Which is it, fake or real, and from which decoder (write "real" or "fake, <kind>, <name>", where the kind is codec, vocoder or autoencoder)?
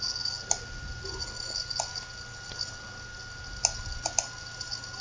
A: real